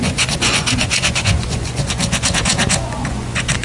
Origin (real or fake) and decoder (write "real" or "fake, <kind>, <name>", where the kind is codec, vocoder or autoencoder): fake, vocoder, Vocos